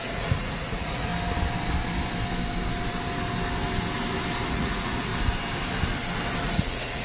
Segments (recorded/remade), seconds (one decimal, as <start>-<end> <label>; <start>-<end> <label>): 0.0-1.1 remade; 1.1-4.5 recorded; 4.5-5.1 remade; 5.1-6.4 recorded; 6.4-7.0 remade